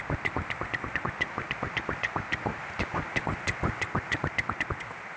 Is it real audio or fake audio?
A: real